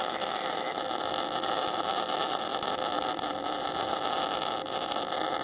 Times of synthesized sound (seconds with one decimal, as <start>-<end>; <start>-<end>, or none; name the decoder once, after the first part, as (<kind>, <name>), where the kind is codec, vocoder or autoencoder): none